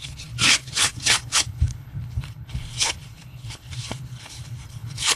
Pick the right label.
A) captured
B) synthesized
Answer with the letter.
B